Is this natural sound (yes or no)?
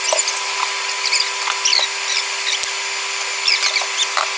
yes